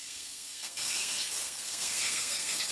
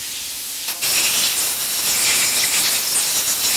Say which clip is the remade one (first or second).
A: first